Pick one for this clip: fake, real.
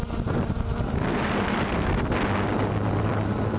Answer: real